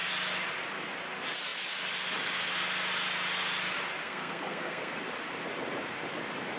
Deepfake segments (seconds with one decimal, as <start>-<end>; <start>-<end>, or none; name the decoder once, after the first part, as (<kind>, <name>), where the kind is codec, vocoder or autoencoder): 4.0-5.0 (codec, SNAC)